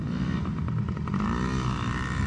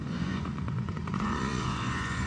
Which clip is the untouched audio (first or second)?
first